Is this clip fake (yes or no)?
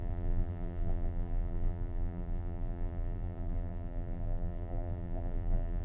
yes